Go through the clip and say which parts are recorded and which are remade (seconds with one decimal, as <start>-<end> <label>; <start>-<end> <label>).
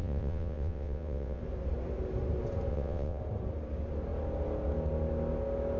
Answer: 0.0-1.4 remade; 1.4-2.7 recorded; 2.7-3.2 remade; 3.2-5.8 recorded